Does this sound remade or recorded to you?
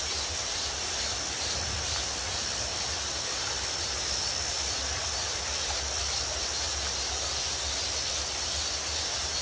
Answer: recorded